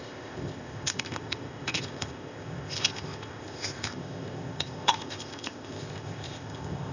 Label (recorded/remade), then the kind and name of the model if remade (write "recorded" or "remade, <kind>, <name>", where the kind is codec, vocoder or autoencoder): remade, codec, ZipCodec